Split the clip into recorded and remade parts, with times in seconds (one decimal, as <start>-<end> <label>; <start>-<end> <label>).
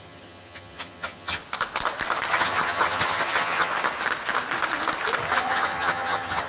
0.0-1.4 remade; 1.4-2.3 recorded; 2.3-3.7 remade; 3.7-5.3 recorded; 5.3-6.5 remade